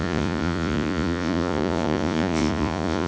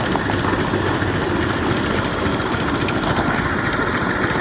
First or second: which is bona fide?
second